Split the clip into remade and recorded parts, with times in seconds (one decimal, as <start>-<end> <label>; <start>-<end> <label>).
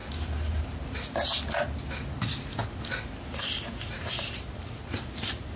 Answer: 0.0-5.6 recorded